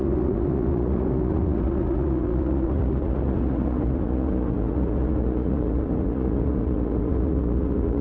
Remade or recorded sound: remade